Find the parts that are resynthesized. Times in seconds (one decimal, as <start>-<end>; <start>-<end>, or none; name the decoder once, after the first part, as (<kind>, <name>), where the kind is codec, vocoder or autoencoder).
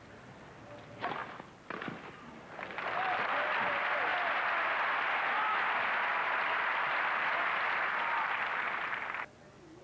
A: none